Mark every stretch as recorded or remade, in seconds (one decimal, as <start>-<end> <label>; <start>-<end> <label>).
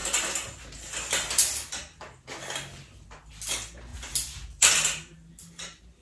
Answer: 0.0-6.0 recorded